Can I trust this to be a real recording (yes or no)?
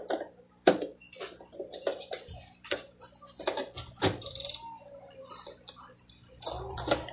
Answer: no